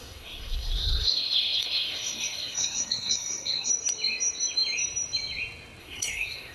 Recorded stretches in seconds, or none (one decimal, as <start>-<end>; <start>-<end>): 3.7-5.8